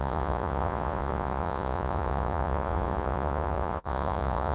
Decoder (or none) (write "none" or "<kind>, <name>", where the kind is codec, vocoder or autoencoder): vocoder, Vocos